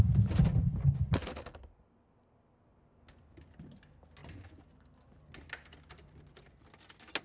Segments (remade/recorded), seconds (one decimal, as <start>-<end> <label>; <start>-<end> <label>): 0.0-7.2 recorded